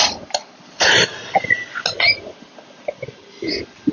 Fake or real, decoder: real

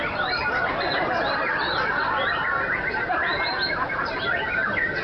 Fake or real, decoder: real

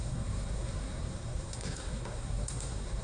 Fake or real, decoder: fake, codec, SNAC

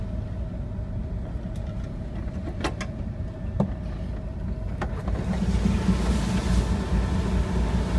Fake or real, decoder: real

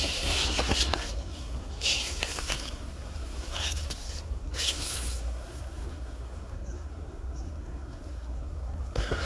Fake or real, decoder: fake, codec, SNAC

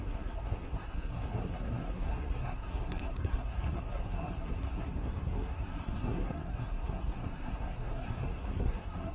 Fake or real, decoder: fake, codec, SNAC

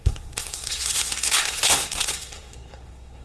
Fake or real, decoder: fake, codec, SNAC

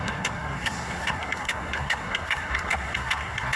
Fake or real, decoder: fake, codec, SNAC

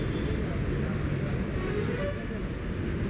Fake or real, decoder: real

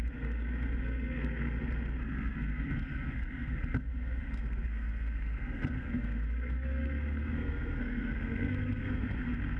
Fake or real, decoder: fake, codec, SNAC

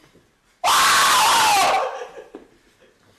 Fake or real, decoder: real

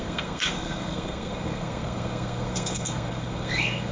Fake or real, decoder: fake, codec, SNAC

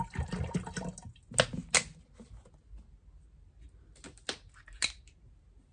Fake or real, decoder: real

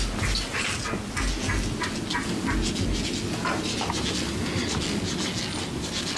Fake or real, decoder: real